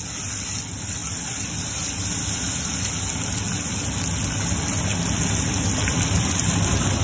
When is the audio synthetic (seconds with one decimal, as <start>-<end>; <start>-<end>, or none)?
none